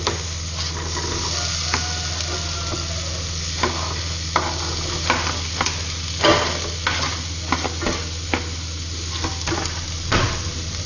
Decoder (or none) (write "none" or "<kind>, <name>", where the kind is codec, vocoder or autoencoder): none